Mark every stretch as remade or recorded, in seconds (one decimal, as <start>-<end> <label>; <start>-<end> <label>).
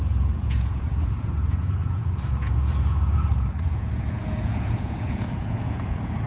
0.0-6.3 remade